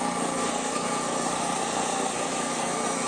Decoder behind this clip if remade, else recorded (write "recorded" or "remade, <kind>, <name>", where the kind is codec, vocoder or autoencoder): remade, codec, SNAC